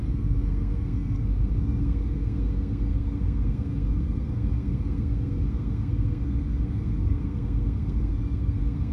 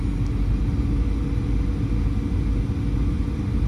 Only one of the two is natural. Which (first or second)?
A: second